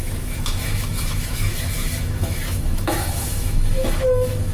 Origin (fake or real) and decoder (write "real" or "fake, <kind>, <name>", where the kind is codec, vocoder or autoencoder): fake, autoencoder, DAC-VAE